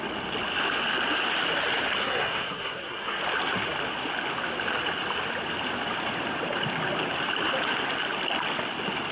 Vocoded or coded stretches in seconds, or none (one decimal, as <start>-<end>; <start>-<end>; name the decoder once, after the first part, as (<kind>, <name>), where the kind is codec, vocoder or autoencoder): 2.0-3.2 (codec, SNAC)